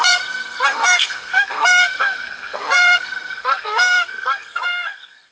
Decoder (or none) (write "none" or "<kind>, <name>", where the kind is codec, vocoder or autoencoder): codec, SNAC